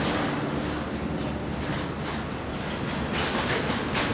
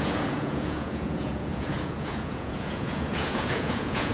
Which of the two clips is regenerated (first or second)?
second